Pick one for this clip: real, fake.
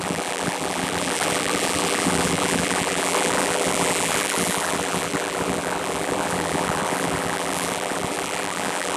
fake